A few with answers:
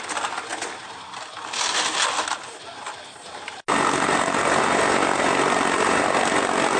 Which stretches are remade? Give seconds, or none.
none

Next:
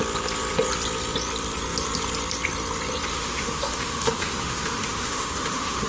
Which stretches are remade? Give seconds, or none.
3.1-5.9 (autoencoder, DAC-VAE)